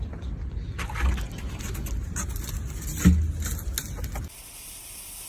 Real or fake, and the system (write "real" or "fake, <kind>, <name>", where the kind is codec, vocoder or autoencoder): real